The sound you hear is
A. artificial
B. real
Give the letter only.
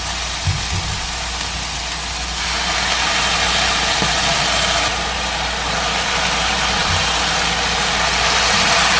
B